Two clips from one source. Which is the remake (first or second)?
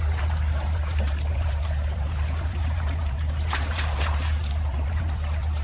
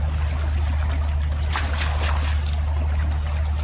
first